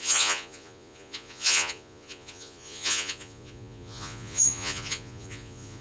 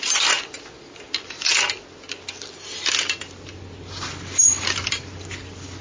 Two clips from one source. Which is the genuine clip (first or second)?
second